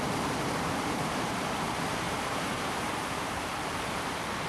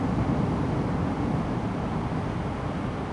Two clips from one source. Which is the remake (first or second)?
first